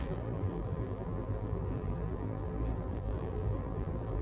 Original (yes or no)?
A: no